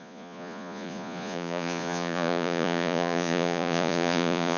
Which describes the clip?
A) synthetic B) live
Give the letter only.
A